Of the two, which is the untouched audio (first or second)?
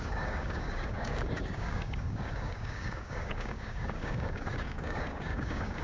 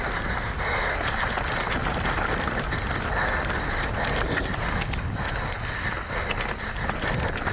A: second